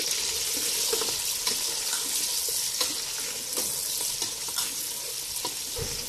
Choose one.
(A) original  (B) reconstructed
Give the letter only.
A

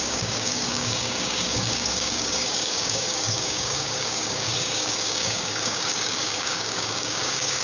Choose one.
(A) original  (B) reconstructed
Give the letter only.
B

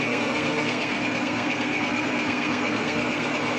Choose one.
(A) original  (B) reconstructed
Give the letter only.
B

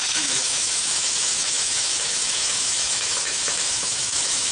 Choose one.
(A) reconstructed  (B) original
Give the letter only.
A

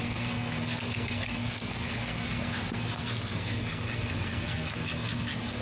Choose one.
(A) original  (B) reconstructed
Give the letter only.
B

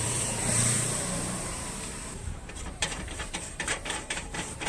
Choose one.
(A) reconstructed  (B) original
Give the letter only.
A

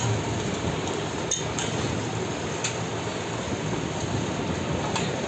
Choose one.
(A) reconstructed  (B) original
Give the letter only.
B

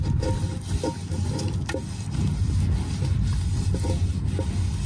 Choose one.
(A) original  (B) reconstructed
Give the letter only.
A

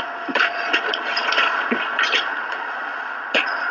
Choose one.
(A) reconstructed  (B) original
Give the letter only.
A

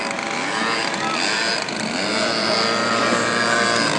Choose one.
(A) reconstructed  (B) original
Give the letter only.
B